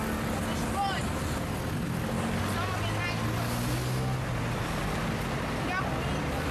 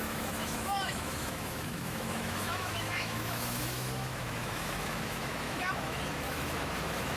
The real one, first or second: first